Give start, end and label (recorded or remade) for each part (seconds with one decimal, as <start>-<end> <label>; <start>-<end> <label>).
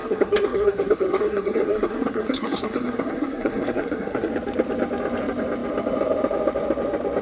0.0-4.3 remade; 4.3-7.2 recorded